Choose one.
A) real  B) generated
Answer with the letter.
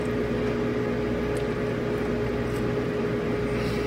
A